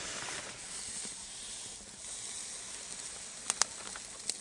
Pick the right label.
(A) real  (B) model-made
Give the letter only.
A